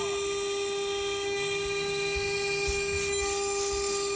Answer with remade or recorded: recorded